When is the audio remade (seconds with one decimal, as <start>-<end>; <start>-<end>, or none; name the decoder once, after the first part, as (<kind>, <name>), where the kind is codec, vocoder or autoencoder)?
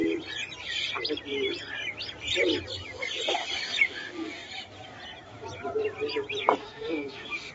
6.6-7.5 (autoencoder, DAC-VAE)